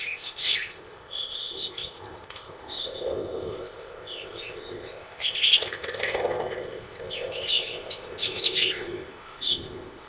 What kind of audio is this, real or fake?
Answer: fake